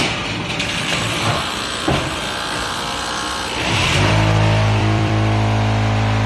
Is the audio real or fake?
fake